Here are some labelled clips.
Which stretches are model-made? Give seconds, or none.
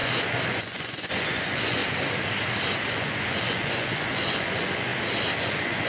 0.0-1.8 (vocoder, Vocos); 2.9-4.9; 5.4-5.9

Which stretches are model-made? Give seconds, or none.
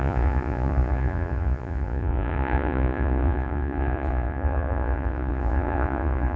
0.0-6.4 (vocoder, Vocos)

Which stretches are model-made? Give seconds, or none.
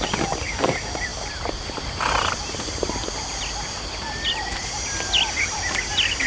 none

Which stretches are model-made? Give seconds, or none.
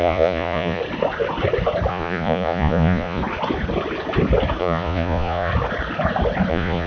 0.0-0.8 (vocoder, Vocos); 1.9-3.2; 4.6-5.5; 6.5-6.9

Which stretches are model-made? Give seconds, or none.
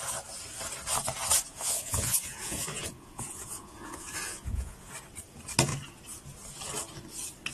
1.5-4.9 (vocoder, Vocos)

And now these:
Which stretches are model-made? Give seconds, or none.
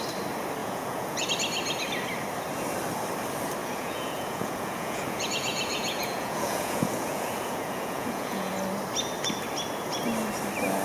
0.6-1.3 (vocoder, Vocos); 3.6-8.5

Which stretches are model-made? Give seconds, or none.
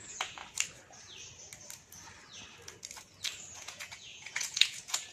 0.0-0.4 (vocoder, Vocos); 3.5-5.1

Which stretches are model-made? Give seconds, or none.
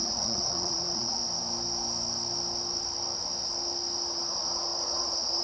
0.0-1.2 (vocoder, Vocos); 4.1-5.4